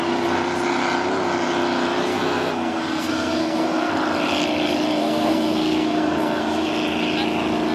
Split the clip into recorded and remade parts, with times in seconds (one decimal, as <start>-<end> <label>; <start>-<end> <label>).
0.0-2.1 recorded; 2.1-3.9 remade; 3.9-5.0 recorded; 5.0-6.7 remade; 6.7-7.7 recorded